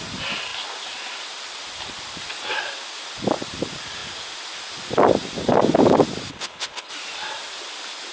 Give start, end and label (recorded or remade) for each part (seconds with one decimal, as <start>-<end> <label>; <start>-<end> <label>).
0.0-6.3 recorded; 6.3-6.9 remade; 6.9-8.1 recorded